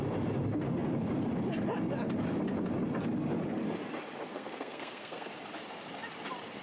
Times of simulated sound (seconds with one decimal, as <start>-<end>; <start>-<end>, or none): 4.3-5.3